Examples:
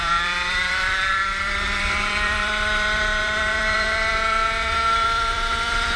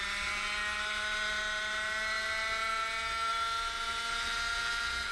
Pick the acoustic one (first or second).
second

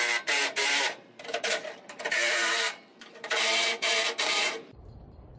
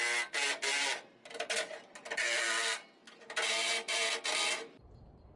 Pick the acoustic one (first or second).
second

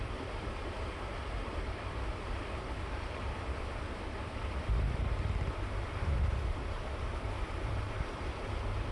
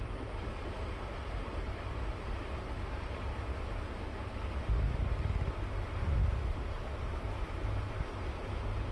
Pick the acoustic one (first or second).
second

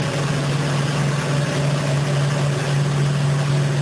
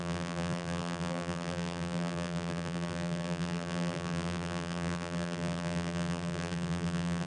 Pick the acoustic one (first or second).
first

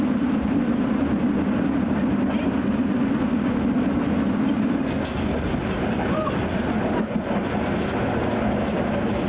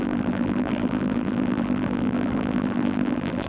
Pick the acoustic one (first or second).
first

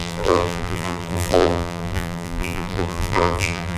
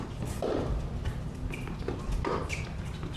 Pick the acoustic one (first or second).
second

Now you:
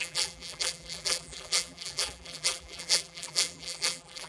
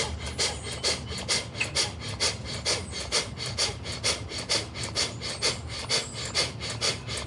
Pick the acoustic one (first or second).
second